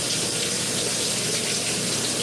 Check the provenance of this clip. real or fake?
real